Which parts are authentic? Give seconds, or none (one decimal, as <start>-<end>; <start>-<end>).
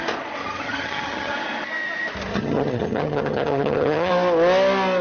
0.0-0.4; 1.3-2.3; 4.1-5.0